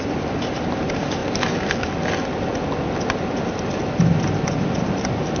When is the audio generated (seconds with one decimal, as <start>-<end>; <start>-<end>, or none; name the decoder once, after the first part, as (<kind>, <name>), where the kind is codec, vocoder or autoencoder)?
none